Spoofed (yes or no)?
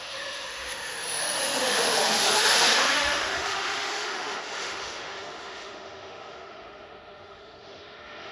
yes